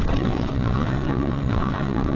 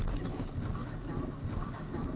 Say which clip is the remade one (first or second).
first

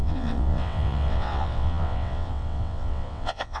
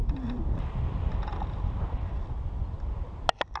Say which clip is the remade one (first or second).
first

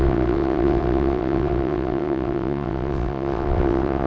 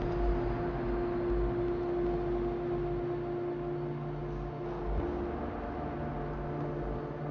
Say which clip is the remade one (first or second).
first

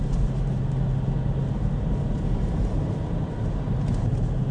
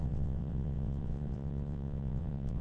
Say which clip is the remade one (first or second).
second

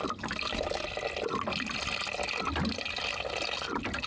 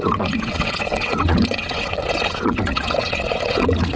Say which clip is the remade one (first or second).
second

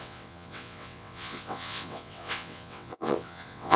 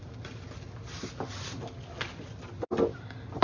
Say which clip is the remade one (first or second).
first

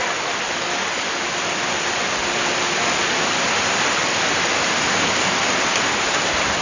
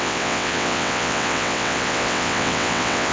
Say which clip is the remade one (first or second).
second